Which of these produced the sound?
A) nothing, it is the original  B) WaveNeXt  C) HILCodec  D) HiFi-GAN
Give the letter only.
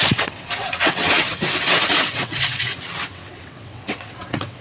B